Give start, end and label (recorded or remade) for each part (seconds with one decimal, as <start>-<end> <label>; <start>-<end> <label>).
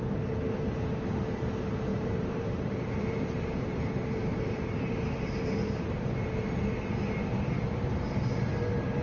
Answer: 0.0-1.9 recorded; 1.9-5.7 remade; 5.7-9.0 recorded